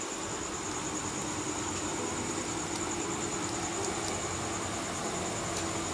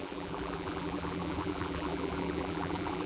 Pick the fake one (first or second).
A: second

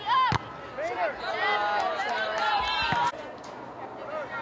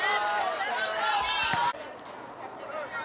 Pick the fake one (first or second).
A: second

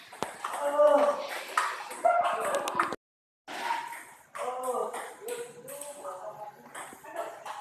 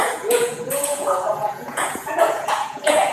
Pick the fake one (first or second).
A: second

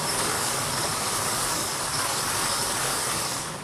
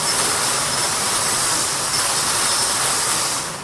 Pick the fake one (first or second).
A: first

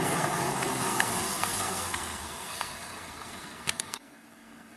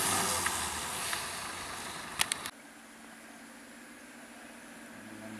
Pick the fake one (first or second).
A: first